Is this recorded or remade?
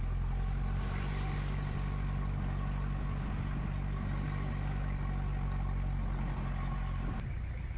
recorded